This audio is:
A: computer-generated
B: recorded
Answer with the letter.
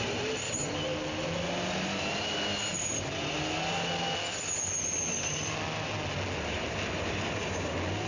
B